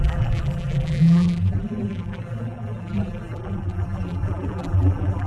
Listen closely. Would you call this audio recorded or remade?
remade